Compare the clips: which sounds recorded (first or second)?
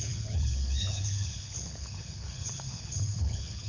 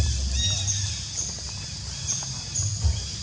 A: second